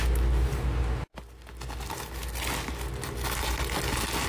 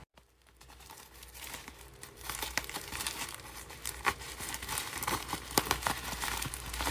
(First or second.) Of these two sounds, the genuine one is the first